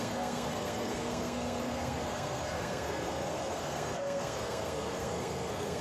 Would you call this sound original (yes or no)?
no